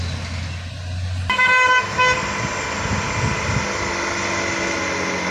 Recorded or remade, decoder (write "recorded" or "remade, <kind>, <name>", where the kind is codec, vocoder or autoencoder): recorded